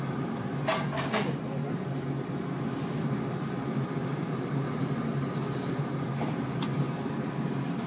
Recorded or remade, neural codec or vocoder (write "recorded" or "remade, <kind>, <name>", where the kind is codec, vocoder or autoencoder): remade, vocoder, BigVGAN v2